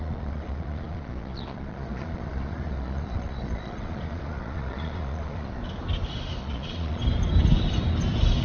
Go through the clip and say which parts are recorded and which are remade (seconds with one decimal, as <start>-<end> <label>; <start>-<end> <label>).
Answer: 0.0-5.6 remade; 5.6-6.4 recorded; 6.4-7.0 remade; 7.0-8.4 recorded